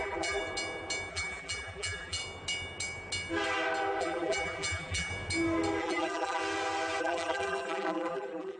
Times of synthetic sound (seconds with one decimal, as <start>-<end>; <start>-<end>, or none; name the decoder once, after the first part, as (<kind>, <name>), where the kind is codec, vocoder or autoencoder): 0.0-0.4 (vocoder, BigVGAN v2); 1.1-2.2; 4.0-5.1; 5.8-6.4; 7.0-8.6